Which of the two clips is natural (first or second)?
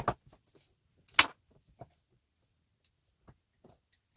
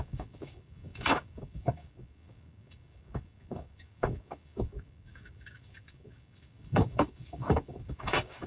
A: first